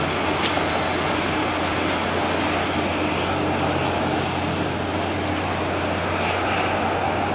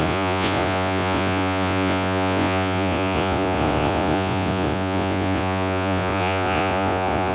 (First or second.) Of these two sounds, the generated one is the second